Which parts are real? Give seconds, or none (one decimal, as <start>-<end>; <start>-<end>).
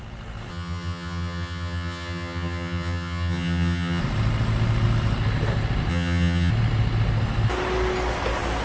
0.0-0.5; 4.0-5.9; 6.5-8.6